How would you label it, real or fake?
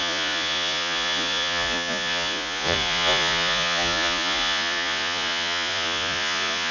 fake